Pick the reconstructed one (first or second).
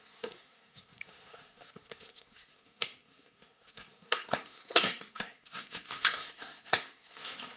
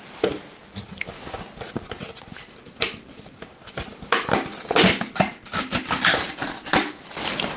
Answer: first